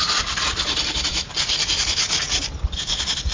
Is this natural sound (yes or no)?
yes